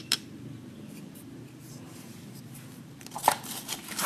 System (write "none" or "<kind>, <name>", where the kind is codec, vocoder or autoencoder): vocoder, BigVGAN v2